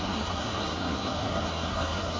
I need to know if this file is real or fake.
fake